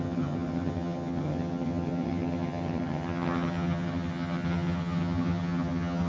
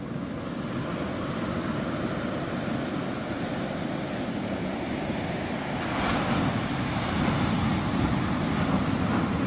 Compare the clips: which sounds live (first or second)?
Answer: second